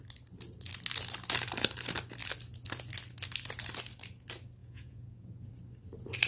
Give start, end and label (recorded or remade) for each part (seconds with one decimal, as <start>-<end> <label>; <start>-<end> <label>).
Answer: 0.0-4.6 recorded; 4.6-5.5 remade; 5.5-6.3 recorded